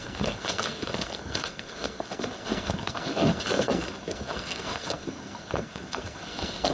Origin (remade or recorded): remade